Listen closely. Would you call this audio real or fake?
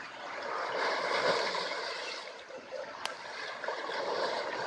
real